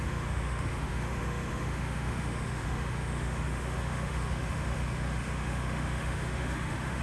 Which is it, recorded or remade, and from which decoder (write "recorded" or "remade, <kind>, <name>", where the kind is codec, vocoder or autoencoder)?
remade, autoencoder, DAC-VAE